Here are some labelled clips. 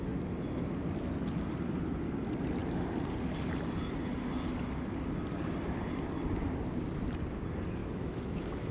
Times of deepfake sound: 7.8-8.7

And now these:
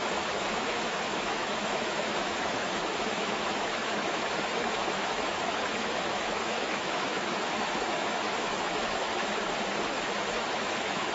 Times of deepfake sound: 0.0-9.2; 10.2-11.1

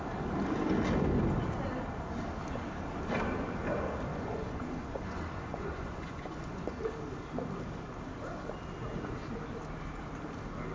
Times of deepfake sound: 4.1-6.8

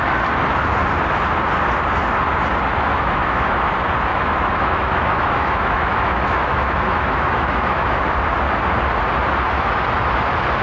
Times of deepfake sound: 2.9-3.4; 4.1-8.0

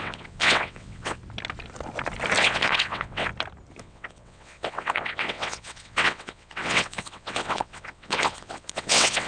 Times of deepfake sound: 0.0-1.2; 2.4-3.3; 3.8-9.3

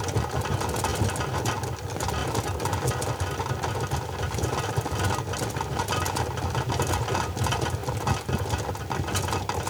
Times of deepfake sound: none

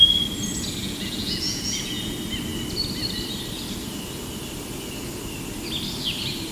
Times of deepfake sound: 0.8-2.1